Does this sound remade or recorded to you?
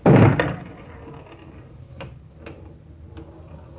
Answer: recorded